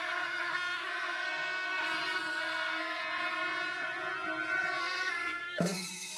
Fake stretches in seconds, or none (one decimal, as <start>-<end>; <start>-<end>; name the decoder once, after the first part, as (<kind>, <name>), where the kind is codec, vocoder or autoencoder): 0.0-1.8 (codec, SNAC); 2.3-3.0; 4.8-6.2